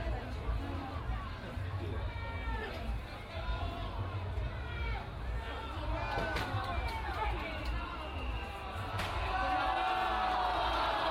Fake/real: real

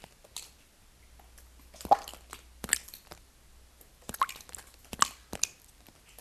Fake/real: real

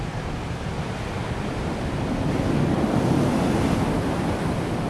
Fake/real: fake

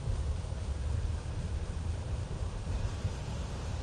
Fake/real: fake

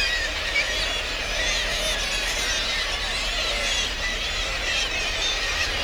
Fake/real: fake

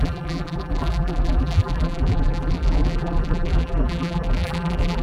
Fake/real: fake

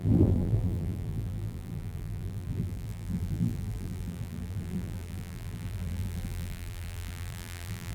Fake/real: fake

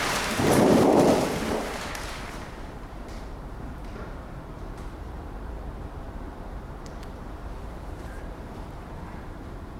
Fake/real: fake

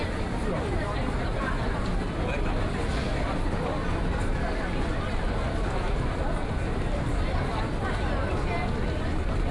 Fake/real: real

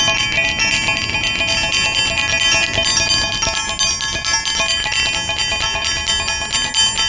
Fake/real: real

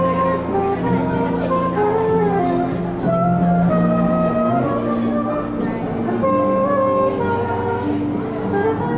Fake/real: real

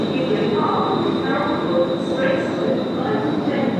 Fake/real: fake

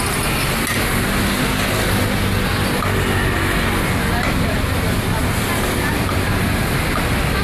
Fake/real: real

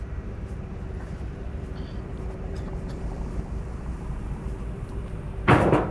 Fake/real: fake